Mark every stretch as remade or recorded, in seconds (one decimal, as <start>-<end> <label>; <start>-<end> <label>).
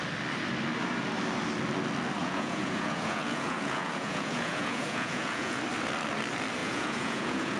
0.0-2.2 recorded; 2.2-5.6 remade; 5.6-6.6 recorded; 6.6-7.6 remade